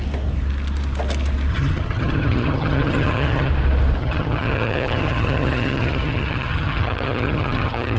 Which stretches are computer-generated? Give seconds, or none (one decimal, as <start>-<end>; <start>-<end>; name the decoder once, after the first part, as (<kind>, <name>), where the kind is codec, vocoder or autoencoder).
1.5-3.5 (vocoder, HiFi-GAN); 4.0-8.0